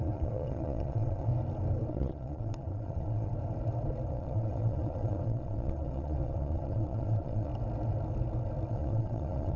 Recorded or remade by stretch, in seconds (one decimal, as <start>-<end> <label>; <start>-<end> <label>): 0.0-1.3 remade; 1.3-1.9 recorded; 1.9-3.3 remade; 3.3-4.1 recorded; 4.1-7.5 remade; 7.5-8.7 recorded; 8.7-9.6 remade